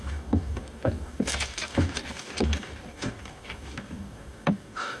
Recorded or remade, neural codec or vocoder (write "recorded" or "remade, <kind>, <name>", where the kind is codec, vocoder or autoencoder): remade, codec, DAC